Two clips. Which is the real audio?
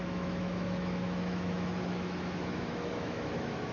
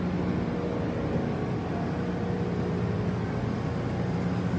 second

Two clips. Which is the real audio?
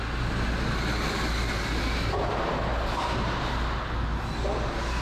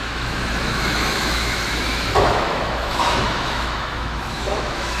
first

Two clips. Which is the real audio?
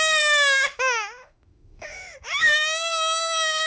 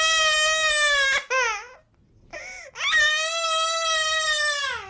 second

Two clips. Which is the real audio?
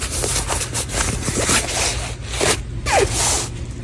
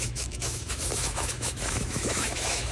first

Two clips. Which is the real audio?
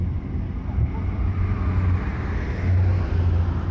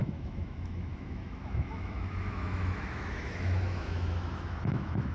first